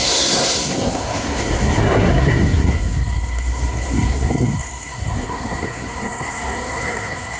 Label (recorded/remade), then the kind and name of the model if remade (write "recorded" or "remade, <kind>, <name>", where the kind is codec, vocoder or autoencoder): remade, codec, SNAC